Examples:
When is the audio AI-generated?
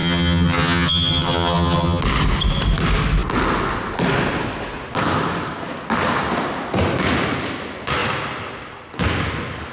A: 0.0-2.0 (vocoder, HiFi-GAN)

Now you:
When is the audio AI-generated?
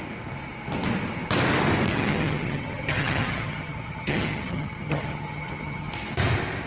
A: 1.9-5.9 (vocoder, HiFi-GAN)